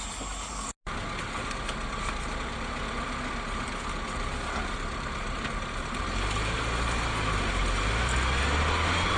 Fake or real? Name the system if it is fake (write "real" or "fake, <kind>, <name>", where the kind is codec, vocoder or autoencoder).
real